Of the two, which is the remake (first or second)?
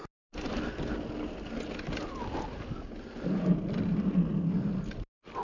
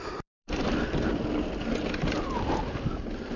second